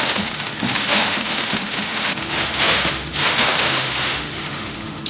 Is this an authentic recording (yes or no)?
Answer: no